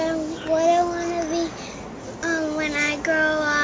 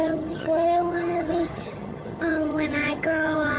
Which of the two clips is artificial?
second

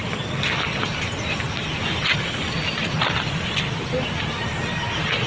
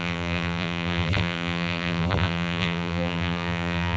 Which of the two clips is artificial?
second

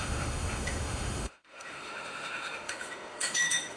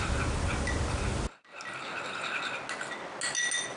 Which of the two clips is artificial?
first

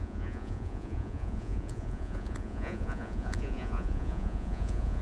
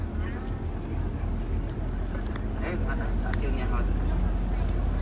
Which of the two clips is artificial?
first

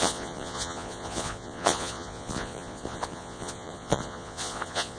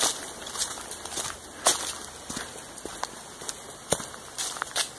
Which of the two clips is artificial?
first